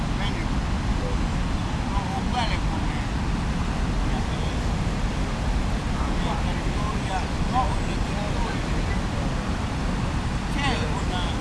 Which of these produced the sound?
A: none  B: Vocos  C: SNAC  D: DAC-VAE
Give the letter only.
A